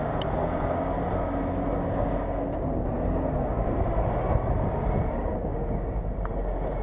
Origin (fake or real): real